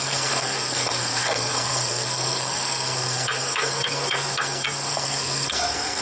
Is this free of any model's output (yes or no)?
no